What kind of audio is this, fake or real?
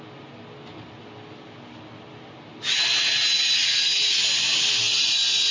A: real